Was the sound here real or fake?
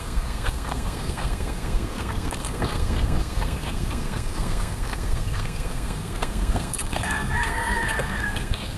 fake